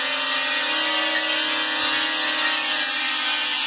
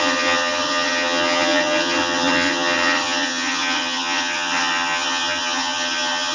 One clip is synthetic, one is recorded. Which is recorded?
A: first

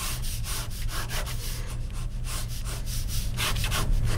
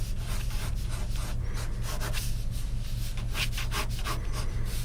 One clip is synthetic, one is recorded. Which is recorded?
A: second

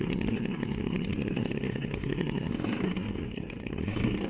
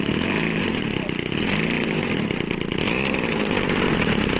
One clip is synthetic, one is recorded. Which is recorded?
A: second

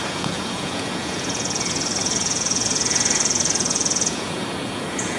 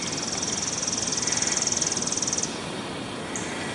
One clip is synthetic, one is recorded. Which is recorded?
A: second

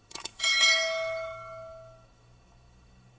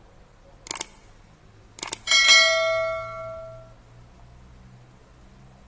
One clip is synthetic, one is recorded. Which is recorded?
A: second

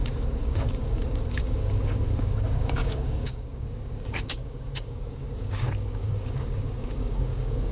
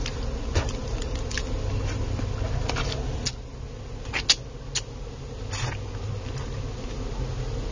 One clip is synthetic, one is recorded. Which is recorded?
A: second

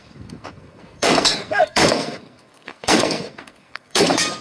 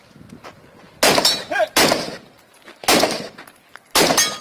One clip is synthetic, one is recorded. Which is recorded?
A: second